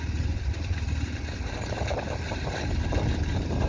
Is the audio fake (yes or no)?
yes